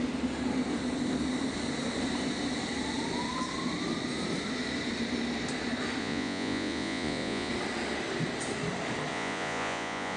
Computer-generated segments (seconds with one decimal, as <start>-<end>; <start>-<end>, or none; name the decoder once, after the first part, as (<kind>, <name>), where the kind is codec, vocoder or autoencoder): 6.0-7.5 (vocoder, Vocos); 9.1-10.2

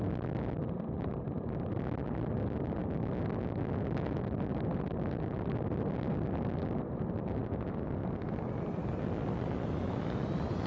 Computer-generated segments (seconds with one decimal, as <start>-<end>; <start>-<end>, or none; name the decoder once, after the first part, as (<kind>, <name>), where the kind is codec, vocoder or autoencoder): none

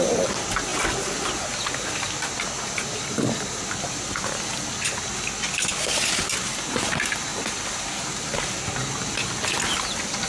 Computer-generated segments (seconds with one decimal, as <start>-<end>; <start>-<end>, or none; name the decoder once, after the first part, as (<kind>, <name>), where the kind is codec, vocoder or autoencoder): none

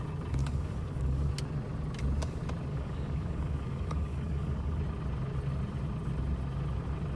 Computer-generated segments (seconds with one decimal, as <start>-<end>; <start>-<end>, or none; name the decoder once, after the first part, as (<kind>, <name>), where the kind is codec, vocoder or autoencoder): 0.4-1.3 (codec, DAC); 2.7-4.8

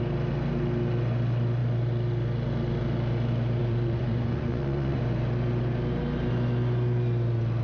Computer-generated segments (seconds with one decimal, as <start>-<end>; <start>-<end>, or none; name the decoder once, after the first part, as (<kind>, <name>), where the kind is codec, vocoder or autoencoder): 3.6-5.0 (vocoder, Vocos)

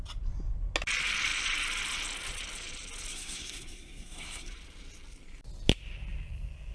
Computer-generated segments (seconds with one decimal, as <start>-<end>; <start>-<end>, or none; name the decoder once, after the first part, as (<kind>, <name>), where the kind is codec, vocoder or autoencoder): 3.1-4.5 (codec, SNAC)

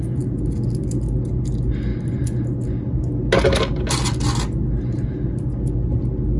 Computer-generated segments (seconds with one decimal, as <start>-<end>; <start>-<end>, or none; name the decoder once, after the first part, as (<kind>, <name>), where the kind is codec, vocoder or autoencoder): none

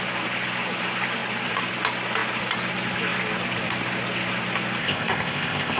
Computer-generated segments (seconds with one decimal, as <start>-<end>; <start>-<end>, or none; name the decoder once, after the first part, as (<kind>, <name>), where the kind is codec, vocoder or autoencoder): 4.8-5.8 (codec, ZipCodec)